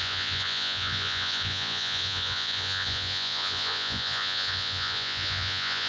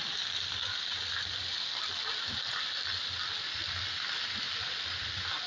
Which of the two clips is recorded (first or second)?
second